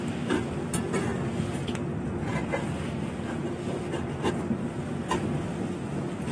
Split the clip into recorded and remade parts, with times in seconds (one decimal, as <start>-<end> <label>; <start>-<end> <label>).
0.0-6.3 recorded